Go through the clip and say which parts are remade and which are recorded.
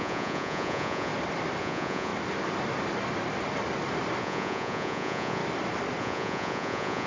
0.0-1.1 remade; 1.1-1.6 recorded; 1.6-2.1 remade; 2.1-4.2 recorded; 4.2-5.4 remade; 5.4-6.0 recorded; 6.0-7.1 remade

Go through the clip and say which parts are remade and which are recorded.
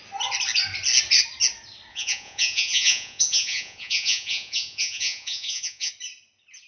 0.0-1.9 recorded; 1.9-5.9 remade; 5.9-6.7 recorded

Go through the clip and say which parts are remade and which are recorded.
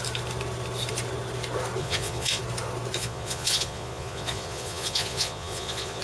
0.0-1.8 recorded; 1.8-2.4 remade; 2.4-3.0 recorded; 3.0-6.0 remade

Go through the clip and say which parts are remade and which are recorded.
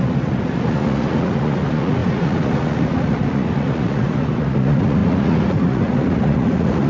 0.0-6.9 remade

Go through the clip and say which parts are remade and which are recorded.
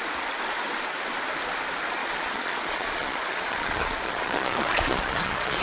0.0-2.0 recorded; 2.0-5.6 remade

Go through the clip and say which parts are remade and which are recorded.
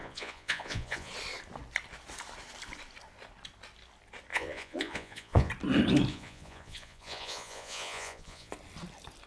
0.0-1.1 remade; 1.1-4.3 recorded; 4.3-5.5 remade; 5.5-6.1 recorded; 6.1-8.5 remade; 8.5-9.3 recorded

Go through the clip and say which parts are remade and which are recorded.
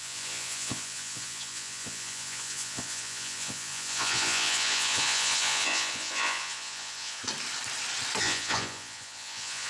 0.0-7.2 remade; 7.2-8.2 recorded; 8.2-9.7 remade